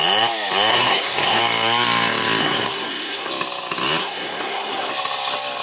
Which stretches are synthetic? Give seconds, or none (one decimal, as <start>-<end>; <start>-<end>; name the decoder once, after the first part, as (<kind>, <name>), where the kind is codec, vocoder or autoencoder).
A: 0.7-1.4 (codec, SNAC); 2.4-3.3; 4.0-4.9